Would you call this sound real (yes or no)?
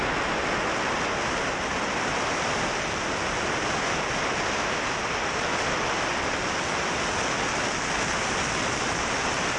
yes